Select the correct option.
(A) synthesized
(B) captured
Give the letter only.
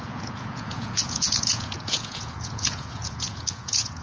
A